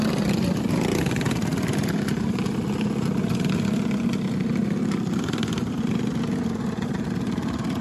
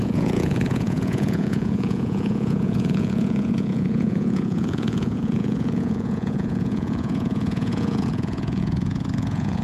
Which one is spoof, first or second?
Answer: second